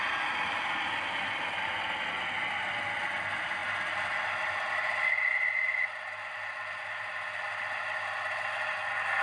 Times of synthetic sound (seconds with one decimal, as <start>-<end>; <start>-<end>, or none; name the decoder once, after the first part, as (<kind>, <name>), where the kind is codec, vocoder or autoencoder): none